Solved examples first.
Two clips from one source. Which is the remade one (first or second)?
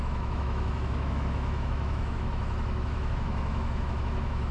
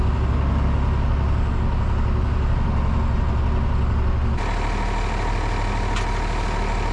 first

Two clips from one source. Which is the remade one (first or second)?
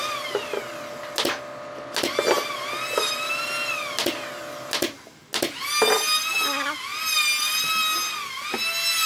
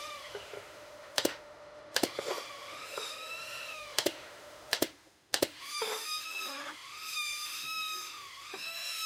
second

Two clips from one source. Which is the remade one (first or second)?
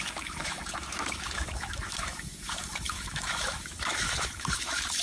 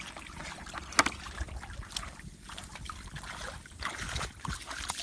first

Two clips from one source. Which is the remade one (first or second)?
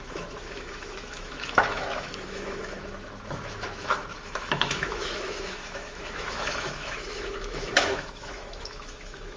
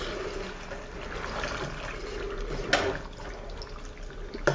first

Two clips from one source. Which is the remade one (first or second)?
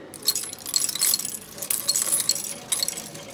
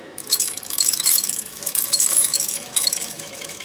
second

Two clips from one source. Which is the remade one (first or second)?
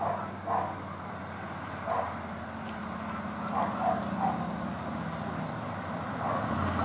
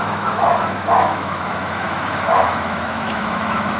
second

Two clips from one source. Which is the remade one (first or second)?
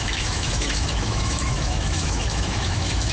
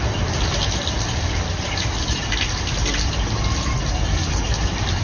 first